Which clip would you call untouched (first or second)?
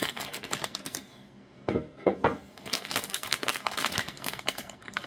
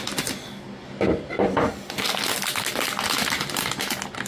second